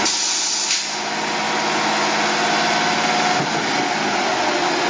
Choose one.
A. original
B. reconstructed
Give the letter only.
A